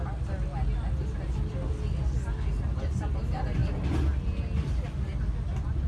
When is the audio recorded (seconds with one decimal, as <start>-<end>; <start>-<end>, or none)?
0.0-5.9